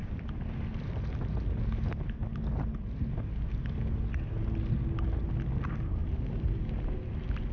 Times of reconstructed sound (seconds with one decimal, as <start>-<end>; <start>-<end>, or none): 0.0-1.1